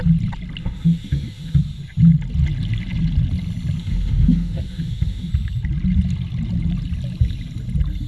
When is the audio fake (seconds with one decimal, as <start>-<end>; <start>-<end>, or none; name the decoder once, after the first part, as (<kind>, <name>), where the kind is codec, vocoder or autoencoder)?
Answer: 0.6-1.6 (autoencoder, DAC-VAE); 3.8-5.3